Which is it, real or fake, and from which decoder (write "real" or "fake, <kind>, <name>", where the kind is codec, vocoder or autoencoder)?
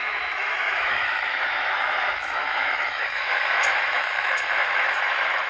fake, autoencoder, DAC-VAE